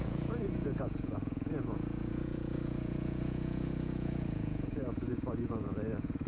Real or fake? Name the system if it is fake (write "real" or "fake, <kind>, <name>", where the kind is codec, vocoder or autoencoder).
fake, vocoder, Vocos